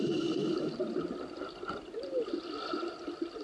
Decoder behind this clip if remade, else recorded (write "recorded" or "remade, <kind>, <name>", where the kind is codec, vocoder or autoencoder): recorded